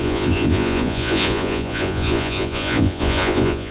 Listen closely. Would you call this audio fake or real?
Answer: fake